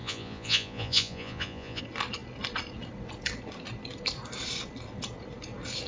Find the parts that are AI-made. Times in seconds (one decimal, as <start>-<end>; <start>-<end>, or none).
0.0-1.8